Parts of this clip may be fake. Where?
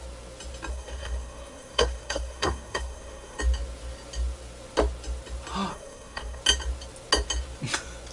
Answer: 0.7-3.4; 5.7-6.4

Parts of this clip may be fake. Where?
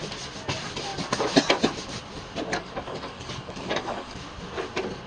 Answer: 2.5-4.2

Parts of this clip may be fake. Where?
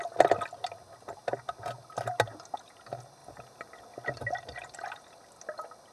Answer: 3.2-4.1